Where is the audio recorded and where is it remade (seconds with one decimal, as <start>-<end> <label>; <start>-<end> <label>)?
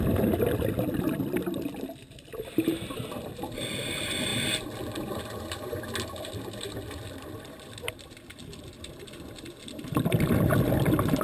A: 0.0-11.2 recorded